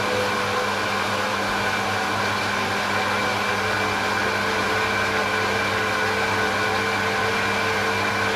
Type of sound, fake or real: real